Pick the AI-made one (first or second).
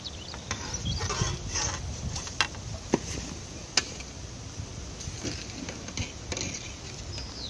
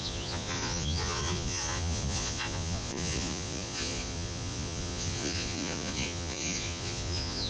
second